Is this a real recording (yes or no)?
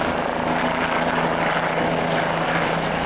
yes